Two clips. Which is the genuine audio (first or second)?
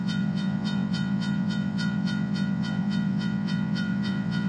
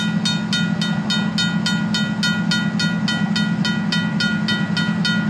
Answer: second